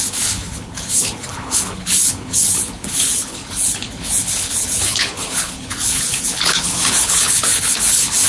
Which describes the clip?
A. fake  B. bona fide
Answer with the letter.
A